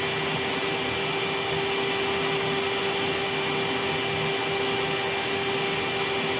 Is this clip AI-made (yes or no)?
no